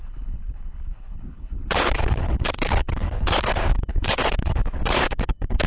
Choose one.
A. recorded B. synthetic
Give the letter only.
B